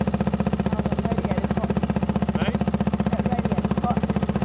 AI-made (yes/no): no